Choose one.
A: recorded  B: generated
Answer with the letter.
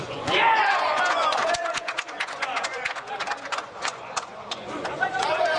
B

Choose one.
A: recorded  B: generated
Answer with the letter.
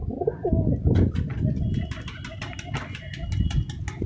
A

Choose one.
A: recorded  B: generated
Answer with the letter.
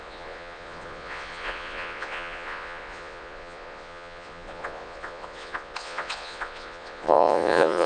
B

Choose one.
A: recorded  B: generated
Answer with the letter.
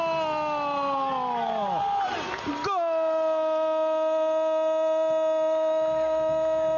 A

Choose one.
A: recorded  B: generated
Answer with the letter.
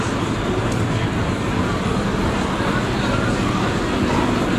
A